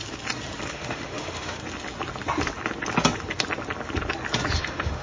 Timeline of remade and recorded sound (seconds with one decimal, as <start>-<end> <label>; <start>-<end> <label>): 0.0-0.7 recorded; 0.7-1.6 remade; 1.6-4.6 recorded; 4.6-5.0 remade